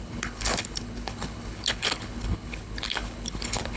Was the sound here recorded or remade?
remade